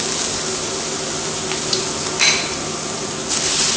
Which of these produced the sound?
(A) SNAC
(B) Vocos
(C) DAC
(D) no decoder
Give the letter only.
D